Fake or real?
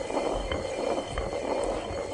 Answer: real